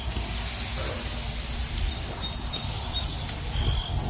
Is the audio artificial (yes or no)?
no